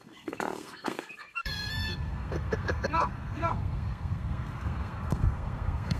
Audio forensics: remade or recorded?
remade